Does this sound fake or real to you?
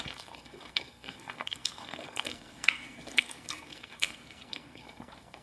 fake